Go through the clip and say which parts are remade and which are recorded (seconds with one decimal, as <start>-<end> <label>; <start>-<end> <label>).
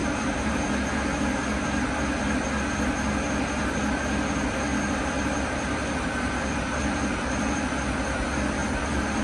0.0-0.7 remade; 0.7-4.7 recorded; 4.7-7.7 remade; 7.7-8.6 recorded; 8.6-9.2 remade